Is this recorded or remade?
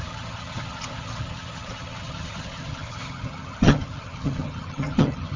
remade